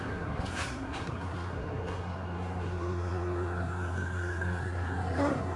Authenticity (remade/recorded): remade